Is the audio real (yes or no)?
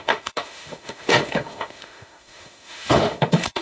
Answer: no